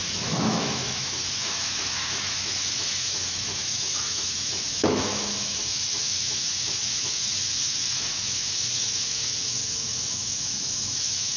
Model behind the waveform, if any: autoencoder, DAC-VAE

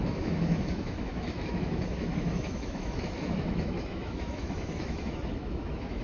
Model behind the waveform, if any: autoencoder, DAC-VAE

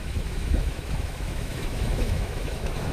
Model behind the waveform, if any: autoencoder, DAC-VAE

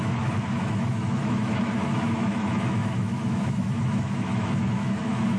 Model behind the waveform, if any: autoencoder, DAC-VAE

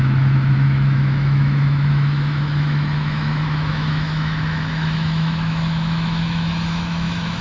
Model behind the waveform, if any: autoencoder, DAC-VAE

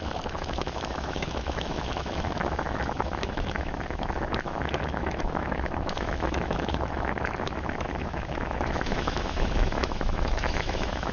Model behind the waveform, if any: autoencoder, DAC-VAE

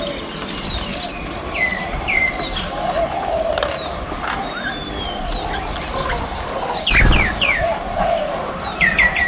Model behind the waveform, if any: none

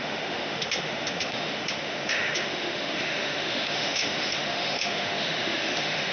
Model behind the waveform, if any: autoencoder, DAC-VAE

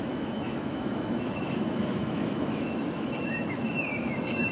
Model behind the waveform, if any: autoencoder, DAC-VAE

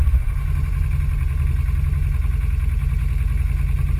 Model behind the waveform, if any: none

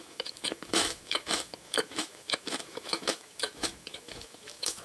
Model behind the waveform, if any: autoencoder, DAC-VAE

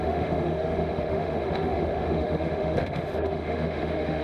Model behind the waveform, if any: autoencoder, DAC-VAE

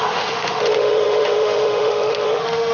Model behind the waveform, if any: autoencoder, DAC-VAE